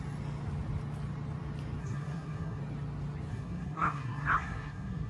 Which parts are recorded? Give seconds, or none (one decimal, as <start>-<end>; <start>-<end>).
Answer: 0.0-1.8; 2.6-3.3

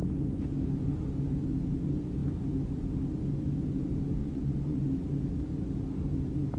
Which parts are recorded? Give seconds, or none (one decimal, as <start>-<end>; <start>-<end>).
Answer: 0.0-4.2; 4.8-6.6

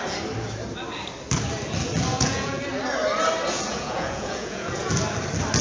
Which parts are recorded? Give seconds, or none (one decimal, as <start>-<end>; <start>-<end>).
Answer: 0.0-2.1; 2.6-3.5; 4.9-5.6